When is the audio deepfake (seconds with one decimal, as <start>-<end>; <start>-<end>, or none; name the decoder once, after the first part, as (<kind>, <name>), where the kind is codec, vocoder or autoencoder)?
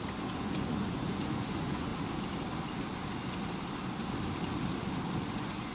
0.0-1.9 (vocoder, Vocos); 5.3-5.7